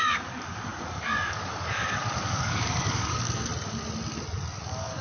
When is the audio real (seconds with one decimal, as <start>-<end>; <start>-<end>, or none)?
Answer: 3.5-4.6